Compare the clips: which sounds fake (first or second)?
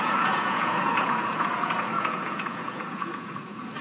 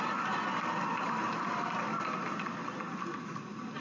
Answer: first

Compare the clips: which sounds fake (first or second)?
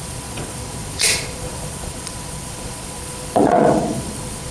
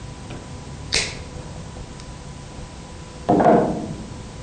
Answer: first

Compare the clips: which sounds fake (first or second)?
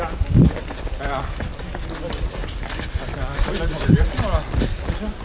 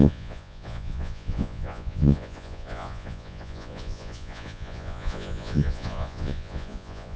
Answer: second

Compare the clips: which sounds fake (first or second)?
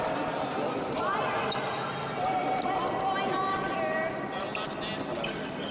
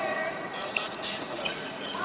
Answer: second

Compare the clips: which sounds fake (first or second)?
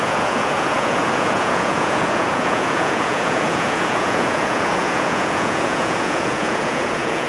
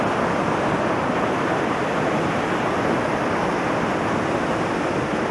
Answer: first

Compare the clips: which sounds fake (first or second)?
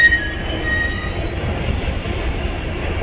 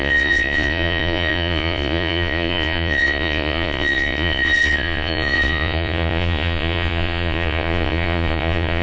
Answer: second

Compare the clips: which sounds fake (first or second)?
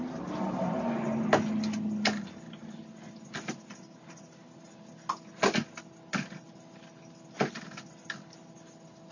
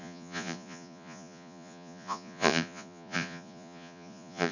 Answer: second